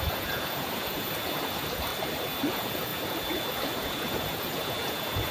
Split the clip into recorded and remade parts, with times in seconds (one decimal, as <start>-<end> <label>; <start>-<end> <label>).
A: 0.0-1.9 remade; 1.9-2.5 recorded; 2.5-5.3 remade